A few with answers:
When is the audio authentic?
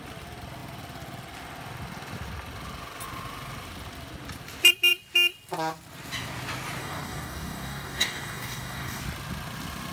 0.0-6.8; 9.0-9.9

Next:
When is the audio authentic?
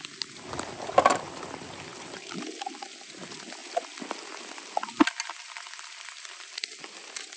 0.0-1.9; 2.4-7.4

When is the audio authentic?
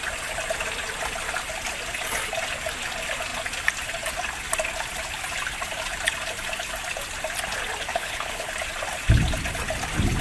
0.0-7.9; 8.5-10.2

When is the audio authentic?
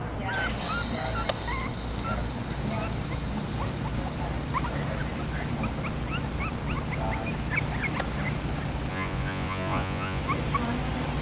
0.0-8.9; 10.2-11.2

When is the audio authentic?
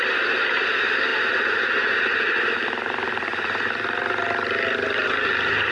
0.0-5.7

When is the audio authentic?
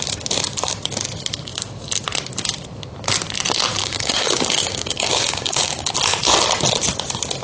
0.0-3.8; 5.9-7.4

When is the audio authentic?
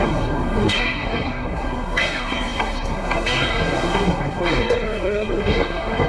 none